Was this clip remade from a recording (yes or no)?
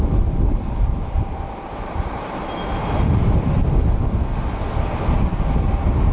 no